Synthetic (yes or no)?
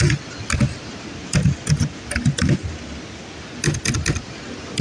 no